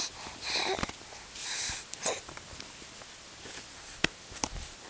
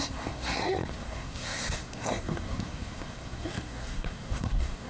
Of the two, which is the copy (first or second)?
second